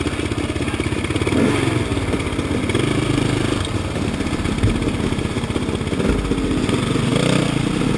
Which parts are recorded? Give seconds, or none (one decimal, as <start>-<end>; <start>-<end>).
0.0-1.9; 4.6-8.0